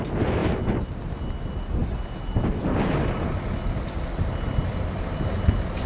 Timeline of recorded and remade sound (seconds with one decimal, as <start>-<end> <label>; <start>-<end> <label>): 0.0-5.9 recorded